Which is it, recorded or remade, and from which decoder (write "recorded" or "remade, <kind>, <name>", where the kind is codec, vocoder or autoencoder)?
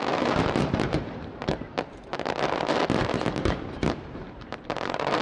remade, vocoder, BigVGAN v2